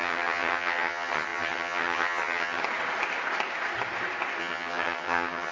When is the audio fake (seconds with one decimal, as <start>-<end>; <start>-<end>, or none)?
0.0-2.6; 4.4-5.5